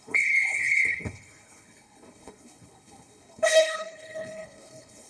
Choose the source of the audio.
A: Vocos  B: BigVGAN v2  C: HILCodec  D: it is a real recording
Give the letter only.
C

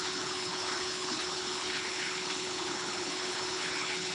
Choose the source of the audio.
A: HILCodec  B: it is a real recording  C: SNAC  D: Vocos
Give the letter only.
A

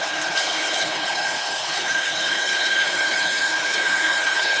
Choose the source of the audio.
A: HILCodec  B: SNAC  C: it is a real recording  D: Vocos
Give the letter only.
A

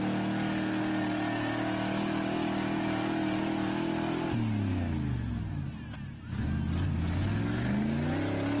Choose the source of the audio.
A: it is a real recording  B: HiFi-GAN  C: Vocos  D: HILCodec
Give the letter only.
A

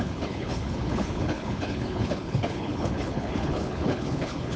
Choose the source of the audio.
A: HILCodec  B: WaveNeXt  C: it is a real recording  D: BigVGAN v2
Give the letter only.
A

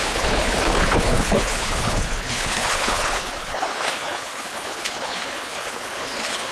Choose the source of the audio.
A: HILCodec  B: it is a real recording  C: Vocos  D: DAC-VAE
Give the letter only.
A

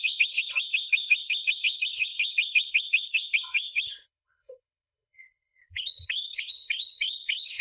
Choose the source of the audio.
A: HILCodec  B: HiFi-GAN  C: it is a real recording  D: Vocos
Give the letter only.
A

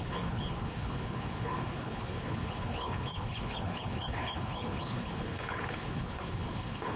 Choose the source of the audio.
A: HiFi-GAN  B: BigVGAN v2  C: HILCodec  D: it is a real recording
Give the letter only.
C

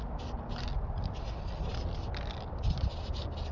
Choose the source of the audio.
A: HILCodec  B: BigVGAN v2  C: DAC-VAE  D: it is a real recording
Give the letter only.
D